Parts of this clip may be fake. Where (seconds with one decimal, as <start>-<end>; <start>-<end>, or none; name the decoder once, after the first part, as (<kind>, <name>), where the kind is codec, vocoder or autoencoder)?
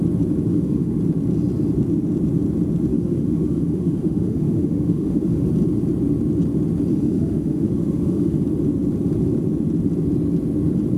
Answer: 0.5-1.0 (autoencoder, DAC-VAE); 2.9-5.5; 6.9-8.4